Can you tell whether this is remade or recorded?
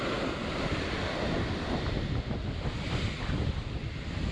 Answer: recorded